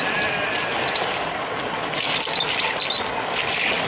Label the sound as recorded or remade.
recorded